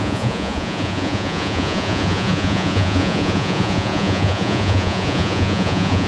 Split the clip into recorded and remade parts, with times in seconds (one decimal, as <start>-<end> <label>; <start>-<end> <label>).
0.0-6.1 remade

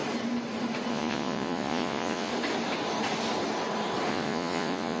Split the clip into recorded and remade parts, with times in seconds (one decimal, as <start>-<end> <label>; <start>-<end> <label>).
0.0-0.9 recorded; 0.9-2.3 remade; 2.3-4.1 recorded; 4.1-5.0 remade